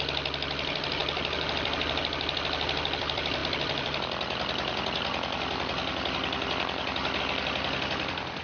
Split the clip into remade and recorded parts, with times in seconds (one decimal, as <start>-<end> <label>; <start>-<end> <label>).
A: 0.0-8.4 recorded